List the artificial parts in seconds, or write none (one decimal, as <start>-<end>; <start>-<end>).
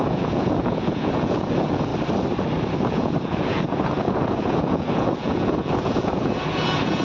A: 0.0-1.9; 2.9-7.0